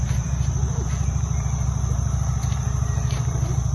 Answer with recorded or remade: remade